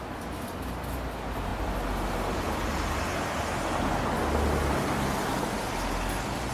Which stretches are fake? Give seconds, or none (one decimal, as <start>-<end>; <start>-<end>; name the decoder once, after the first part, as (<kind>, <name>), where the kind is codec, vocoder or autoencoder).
none